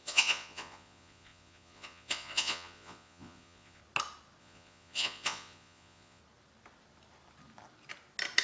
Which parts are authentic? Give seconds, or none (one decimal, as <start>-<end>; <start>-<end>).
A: 3.8-4.4; 6.2-8.4